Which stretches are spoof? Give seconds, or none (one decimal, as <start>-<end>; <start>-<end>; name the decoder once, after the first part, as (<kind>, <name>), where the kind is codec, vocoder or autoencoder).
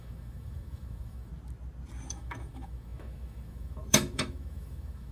0.0-1.3 (autoencoder, DAC-VAE); 2.1-5.1